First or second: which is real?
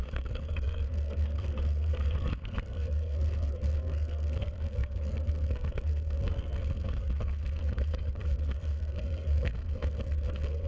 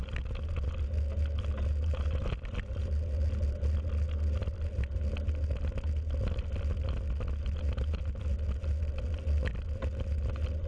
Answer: second